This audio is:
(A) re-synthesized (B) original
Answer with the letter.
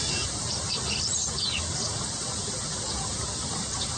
A